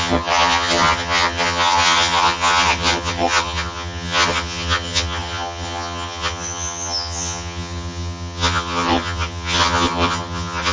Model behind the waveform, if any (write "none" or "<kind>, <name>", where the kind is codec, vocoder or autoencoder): vocoder, HiFi-GAN